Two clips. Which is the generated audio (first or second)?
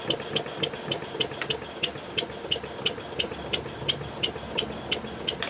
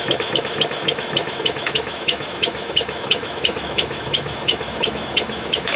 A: second